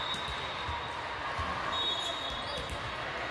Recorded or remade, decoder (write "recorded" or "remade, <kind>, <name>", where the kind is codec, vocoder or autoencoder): recorded